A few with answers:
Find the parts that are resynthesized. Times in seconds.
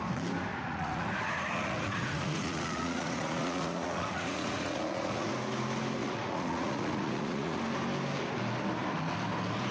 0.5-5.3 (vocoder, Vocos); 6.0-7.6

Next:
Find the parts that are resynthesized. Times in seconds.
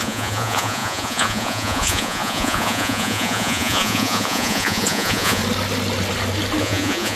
0.0-5.4 (vocoder, Vocos); 6.6-7.2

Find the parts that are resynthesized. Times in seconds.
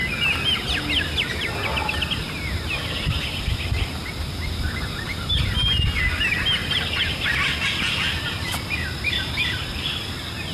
none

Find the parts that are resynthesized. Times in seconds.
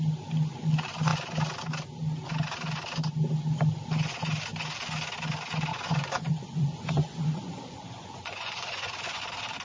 5.7-9.2 (vocoder, Vocos)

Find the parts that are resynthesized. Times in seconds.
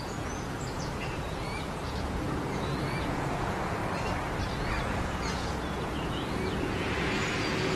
0.0-3.8 (vocoder, Vocos); 4.6-7.8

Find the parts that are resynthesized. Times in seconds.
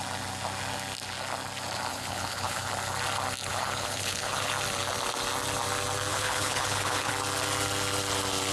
1.9-2.7 (codec, HILCodec); 3.5-4.5; 6.1-7.1